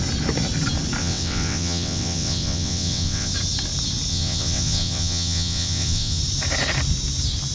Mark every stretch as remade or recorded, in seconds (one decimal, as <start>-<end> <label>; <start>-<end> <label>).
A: 0.0-1.0 recorded; 1.0-3.3 remade; 3.3-4.1 recorded; 4.1-6.2 remade; 6.2-7.5 recorded